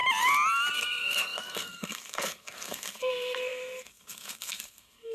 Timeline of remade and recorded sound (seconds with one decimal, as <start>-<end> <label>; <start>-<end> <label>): 0.0-0.7 recorded; 0.7-5.1 remade